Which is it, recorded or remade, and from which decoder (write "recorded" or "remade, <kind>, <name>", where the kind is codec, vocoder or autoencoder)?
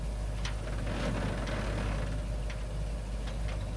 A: recorded